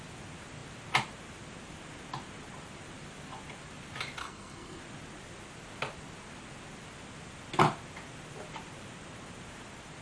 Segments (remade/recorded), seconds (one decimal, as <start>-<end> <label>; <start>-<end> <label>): 0.0-4.2 recorded; 4.2-4.8 remade; 4.8-10.0 recorded